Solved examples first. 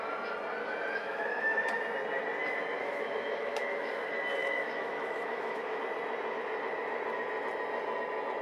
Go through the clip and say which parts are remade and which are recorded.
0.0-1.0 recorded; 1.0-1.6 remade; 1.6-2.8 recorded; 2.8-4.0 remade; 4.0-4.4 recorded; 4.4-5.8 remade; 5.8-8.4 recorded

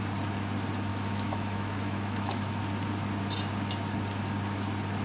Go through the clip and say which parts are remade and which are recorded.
0.0-0.9 recorded; 0.9-2.6 remade; 2.6-5.0 recorded

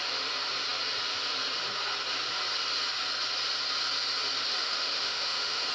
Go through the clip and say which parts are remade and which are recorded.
0.0-4.6 recorded; 4.6-5.7 remade

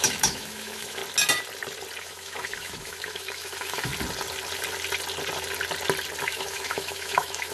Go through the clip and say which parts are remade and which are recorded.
0.0-1.0 remade; 1.0-2.0 recorded; 2.0-3.9 remade; 3.9-6.2 recorded; 6.2-7.5 remade

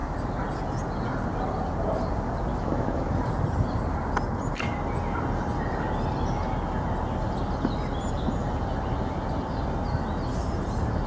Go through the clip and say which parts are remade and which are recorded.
0.0-2.5 recorded; 2.5-3.1 remade; 3.1-11.1 recorded

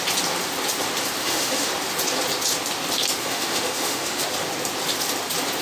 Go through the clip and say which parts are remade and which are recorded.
0.0-1.2 recorded; 1.2-1.7 remade; 1.7-3.2 recorded; 3.2-4.2 remade; 4.2-5.6 recorded

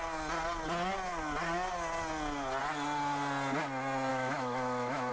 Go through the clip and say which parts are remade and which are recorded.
0.0-4.1 recorded; 4.1-5.1 remade

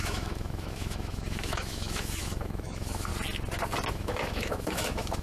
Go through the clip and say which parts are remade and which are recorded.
0.0-3.1 remade; 3.1-3.9 recorded; 3.9-5.2 remade